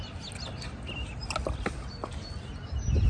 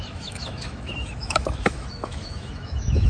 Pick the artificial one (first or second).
second